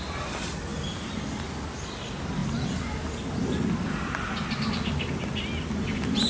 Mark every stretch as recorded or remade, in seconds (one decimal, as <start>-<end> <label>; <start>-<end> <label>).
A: 0.0-6.3 recorded